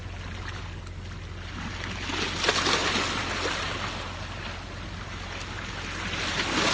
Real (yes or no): yes